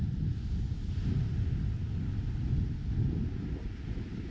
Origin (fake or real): real